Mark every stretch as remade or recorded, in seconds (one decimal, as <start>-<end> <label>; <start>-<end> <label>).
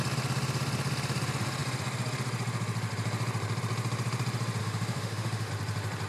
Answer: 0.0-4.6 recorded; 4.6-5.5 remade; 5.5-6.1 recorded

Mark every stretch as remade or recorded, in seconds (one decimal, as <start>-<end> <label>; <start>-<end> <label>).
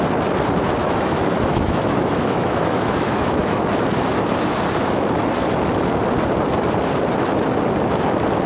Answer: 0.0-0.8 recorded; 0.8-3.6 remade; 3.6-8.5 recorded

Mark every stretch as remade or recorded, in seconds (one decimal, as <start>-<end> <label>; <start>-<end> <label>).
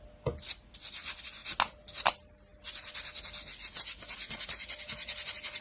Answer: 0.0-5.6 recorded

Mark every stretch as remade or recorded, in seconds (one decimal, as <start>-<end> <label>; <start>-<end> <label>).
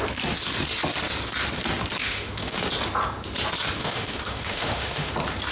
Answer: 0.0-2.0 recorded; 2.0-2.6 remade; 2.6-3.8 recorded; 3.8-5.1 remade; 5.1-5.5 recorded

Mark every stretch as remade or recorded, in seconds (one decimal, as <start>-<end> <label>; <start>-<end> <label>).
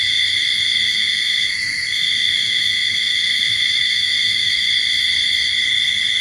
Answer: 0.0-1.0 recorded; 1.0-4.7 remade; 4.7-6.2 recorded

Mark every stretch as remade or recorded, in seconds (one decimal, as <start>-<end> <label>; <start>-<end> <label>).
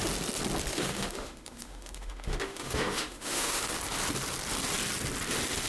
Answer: 0.0-0.7 recorded; 0.7-3.6 remade; 3.6-5.7 recorded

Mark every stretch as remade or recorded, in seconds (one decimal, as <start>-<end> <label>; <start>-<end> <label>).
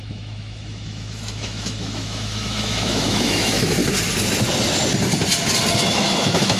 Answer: 0.0-3.8 remade; 3.8-5.9 recorded; 5.9-6.6 remade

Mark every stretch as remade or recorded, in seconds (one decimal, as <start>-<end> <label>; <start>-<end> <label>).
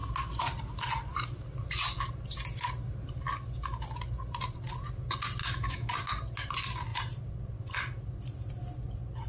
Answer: 0.0-5.4 recorded; 5.4-5.9 remade; 5.9-9.3 recorded